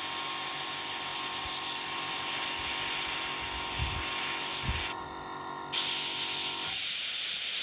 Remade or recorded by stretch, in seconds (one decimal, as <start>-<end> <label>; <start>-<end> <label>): 0.0-1.1 recorded; 1.1-2.4 remade; 2.4-7.6 recorded